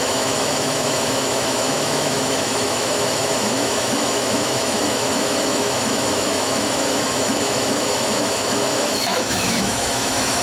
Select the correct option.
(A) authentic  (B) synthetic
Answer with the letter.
B